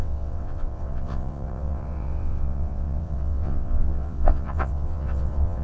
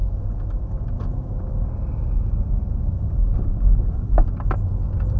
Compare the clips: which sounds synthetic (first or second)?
first